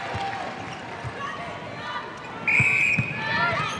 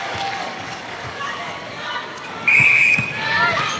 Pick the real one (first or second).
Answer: first